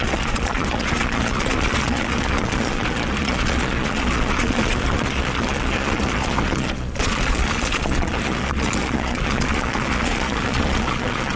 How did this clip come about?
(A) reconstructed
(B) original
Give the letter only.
A